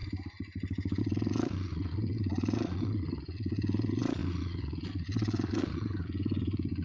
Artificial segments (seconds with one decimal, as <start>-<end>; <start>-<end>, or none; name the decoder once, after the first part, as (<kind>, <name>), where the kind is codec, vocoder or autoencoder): 1.0-6.8 (vocoder, Vocos)